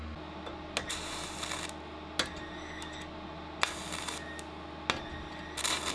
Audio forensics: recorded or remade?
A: recorded